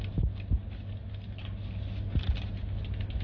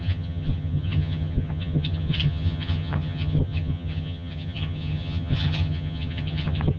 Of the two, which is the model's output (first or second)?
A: second